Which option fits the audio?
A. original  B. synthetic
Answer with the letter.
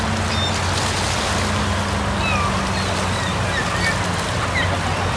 A